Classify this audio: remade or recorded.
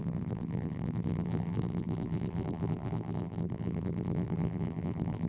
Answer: remade